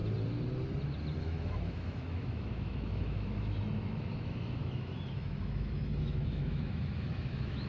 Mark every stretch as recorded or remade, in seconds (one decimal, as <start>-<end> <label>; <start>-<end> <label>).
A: 0.0-1.2 recorded; 1.2-7.7 remade